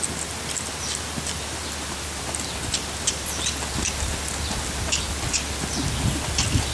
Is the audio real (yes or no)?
yes